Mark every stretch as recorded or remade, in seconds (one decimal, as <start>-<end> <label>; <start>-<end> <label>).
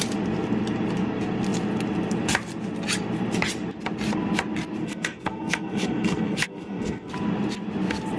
0.0-4.8 recorded; 4.8-7.1 remade; 7.1-8.2 recorded